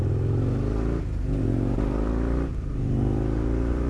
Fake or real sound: real